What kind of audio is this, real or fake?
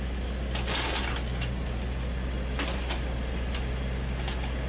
real